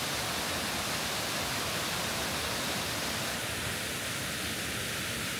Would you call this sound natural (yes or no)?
yes